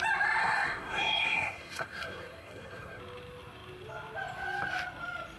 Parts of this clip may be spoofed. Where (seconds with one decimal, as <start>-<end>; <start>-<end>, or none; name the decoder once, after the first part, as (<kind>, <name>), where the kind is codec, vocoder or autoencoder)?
0.4-3.0 (codec, SNAC)